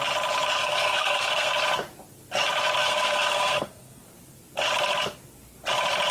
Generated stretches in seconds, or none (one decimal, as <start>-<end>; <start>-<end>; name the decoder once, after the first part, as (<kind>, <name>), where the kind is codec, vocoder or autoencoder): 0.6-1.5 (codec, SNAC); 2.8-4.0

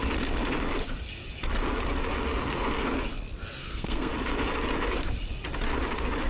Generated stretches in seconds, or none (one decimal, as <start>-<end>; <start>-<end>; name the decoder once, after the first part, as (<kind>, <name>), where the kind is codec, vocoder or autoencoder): 3.6-4.1 (codec, SNAC)

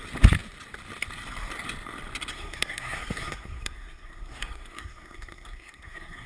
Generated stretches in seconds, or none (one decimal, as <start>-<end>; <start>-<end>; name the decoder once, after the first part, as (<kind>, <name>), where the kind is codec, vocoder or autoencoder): 2.3-6.3 (codec, SNAC)

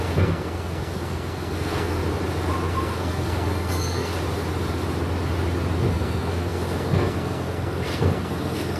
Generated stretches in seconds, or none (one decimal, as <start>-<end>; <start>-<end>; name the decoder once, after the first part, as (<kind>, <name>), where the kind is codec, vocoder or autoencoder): 0.0-2.0 (codec, SNAC); 2.7-4.1; 5.9-8.8

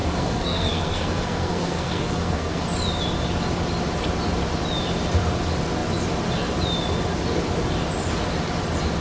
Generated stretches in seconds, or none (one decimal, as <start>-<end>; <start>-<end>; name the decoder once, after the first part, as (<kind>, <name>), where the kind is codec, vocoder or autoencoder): 0.0-2.6 (codec, SNAC)

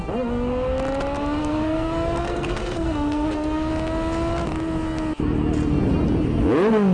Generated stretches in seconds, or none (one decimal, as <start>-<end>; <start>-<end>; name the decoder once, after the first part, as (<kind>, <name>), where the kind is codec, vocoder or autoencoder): 1.4-3.7 (codec, SNAC)

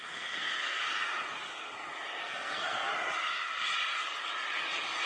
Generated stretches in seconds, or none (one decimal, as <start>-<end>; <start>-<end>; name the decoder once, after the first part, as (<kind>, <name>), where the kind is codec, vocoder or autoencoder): 0.0-0.8 (codec, SNAC); 2.2-2.9

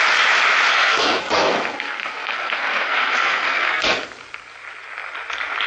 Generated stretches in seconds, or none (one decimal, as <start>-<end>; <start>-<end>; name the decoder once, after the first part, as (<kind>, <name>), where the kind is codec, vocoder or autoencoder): 0.7-4.1 (codec, SNAC)